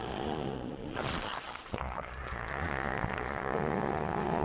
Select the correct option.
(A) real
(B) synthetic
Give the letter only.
B